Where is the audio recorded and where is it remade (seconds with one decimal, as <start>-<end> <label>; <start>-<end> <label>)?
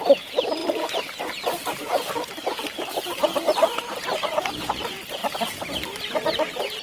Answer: 0.0-5.2 remade; 5.2-6.0 recorded; 6.0-6.8 remade